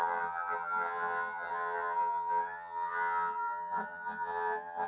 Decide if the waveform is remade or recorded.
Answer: remade